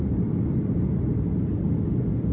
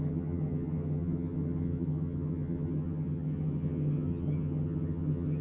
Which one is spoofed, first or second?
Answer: second